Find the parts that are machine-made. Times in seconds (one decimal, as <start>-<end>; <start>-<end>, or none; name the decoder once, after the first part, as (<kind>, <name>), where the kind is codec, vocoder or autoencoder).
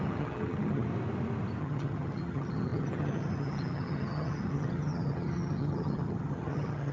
0.0-0.9 (vocoder, HiFi-GAN); 1.6-6.9